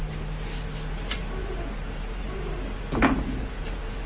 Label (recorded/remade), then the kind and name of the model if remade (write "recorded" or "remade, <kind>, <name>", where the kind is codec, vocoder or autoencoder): recorded